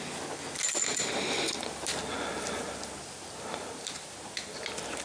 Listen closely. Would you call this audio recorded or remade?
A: recorded